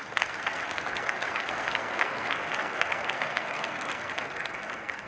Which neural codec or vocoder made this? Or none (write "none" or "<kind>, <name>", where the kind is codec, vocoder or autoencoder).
codec, SNAC